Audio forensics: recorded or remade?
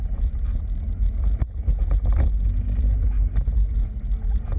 recorded